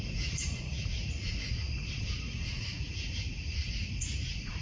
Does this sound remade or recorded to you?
remade